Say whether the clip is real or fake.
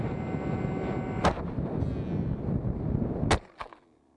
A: real